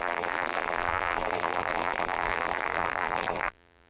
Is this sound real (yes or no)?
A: no